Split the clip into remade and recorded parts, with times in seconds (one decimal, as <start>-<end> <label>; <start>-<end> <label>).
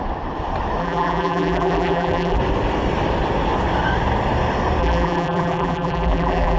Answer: 0.0-0.8 recorded; 0.8-2.4 remade; 2.4-4.8 recorded; 4.8-6.6 remade